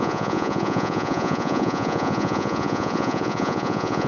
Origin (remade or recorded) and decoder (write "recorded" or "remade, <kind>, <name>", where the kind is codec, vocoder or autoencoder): remade, vocoder, Vocos